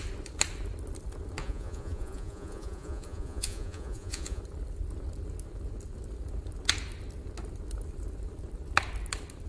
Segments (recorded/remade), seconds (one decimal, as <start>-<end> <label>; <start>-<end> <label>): 0.0-1.4 recorded; 1.4-4.4 remade; 4.4-9.5 recorded